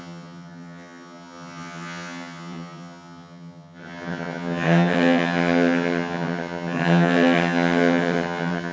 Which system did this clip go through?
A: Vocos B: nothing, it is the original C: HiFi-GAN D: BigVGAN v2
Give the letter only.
C